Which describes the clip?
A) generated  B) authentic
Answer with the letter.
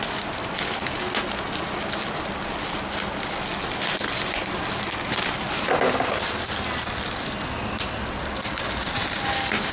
B